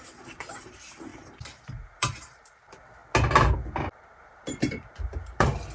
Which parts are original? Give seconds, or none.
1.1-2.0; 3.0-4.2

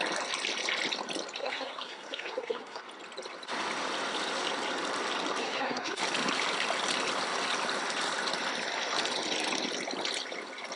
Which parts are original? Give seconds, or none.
0.0-1.4; 2.8-5.4; 6.0-10.8

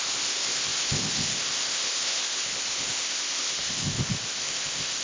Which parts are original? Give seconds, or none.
none

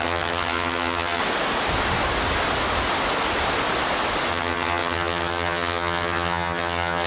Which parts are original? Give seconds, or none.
1.2-4.3

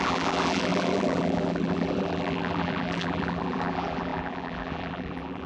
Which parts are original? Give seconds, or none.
none

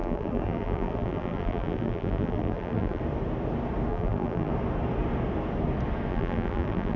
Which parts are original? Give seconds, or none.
3.0-3.9; 4.5-6.1

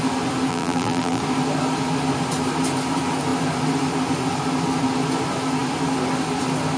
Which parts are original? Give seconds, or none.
0.0-0.5; 1.2-6.8